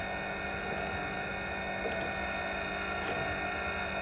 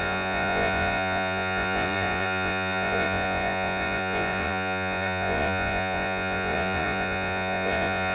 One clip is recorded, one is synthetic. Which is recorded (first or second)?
first